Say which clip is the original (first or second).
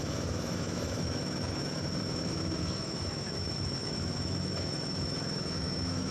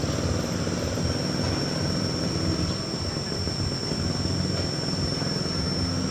second